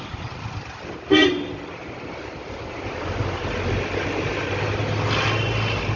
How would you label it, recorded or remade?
recorded